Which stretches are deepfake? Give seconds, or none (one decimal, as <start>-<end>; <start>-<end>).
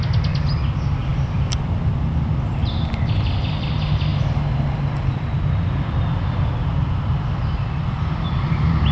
1.1-1.9; 4.1-6.1